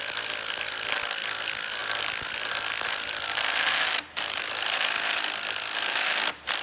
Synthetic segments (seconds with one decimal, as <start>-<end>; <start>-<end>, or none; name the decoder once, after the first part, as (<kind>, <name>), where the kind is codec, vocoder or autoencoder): none